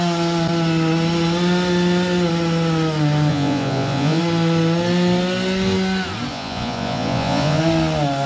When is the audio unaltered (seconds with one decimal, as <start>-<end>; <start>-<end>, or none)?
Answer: 0.0-3.3; 4.2-6.3; 7.6-8.3